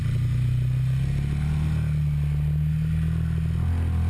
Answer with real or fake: real